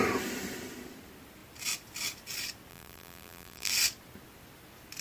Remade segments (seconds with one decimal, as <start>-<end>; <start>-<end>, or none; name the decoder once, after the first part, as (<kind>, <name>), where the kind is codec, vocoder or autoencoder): 2.7-3.7 (vocoder, BigVGAN v2)